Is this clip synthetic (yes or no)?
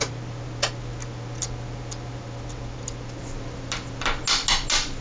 no